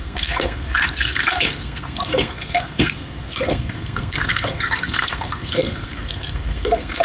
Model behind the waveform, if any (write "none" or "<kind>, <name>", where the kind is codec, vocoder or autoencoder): codec, SNAC